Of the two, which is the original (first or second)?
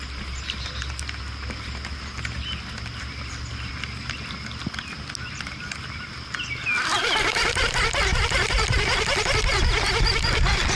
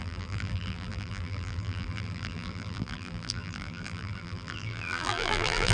first